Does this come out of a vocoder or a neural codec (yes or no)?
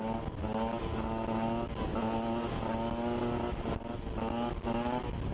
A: no